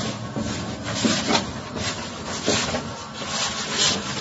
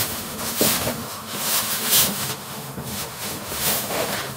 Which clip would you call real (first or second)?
first